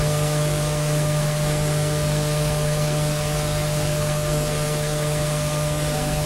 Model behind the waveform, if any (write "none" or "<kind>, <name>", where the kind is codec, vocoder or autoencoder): codec, SNAC